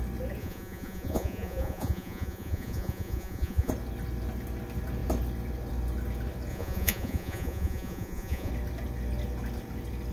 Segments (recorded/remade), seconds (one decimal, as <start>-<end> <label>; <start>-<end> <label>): 0.0-0.4 recorded; 0.4-3.7 remade; 3.7-6.5 recorded; 6.5-8.5 remade; 8.5-10.1 recorded